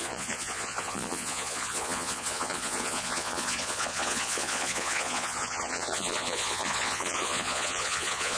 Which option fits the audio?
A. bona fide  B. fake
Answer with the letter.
B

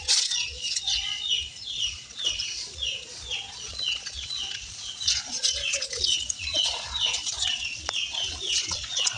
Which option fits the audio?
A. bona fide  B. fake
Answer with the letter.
B